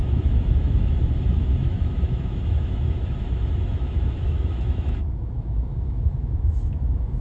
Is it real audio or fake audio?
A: fake